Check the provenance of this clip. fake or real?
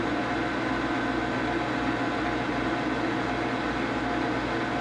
real